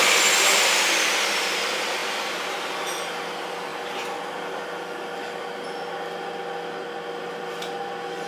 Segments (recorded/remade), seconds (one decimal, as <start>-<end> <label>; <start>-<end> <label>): 0.0-8.3 recorded